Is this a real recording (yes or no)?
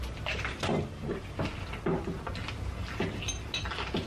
yes